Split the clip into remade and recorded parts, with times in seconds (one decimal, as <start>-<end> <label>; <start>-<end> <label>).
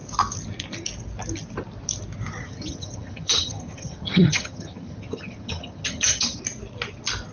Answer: 0.0-2.4 recorded; 2.4-6.4 remade; 6.4-7.3 recorded